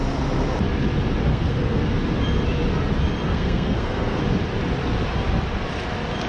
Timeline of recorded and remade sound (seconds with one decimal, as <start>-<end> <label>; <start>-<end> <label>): 0.0-1.3 recorded; 1.3-1.8 remade; 1.8-3.3 recorded; 3.3-4.2 remade; 4.2-6.3 recorded